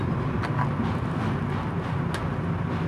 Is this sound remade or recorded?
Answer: recorded